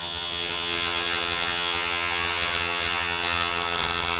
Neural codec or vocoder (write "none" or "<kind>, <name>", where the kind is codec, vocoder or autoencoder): vocoder, HiFi-GAN